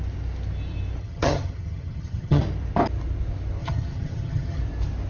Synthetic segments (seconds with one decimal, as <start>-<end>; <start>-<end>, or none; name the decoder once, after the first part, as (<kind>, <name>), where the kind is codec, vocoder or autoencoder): 1.0-2.4 (vocoder, HiFi-GAN); 3.6-4.6

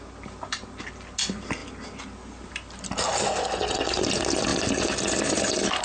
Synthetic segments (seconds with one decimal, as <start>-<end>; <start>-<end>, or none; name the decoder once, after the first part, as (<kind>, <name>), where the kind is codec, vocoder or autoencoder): none

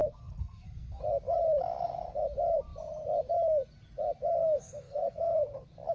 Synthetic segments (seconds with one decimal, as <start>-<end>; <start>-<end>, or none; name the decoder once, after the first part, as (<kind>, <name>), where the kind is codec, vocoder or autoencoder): 0.0-1.0 (codec, SNAC); 4.4-5.4